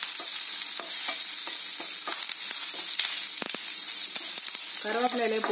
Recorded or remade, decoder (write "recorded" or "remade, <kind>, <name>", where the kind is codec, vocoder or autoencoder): recorded